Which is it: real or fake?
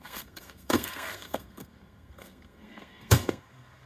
fake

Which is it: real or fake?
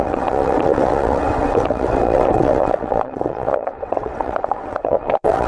fake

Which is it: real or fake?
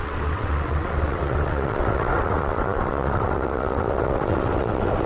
fake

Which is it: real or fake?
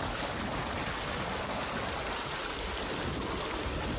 real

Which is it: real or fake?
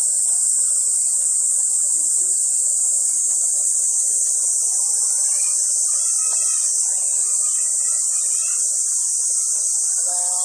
real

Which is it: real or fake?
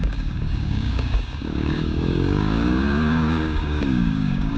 fake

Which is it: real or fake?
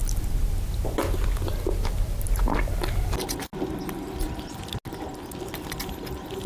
real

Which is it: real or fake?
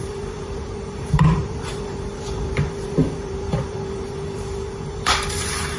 fake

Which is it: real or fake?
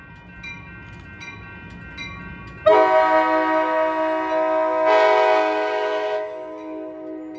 real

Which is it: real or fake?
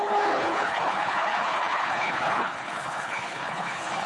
fake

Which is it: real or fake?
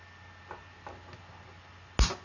real